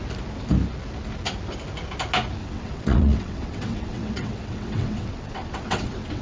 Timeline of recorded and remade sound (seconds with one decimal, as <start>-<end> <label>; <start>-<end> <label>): 0.0-2.4 recorded; 2.4-6.2 remade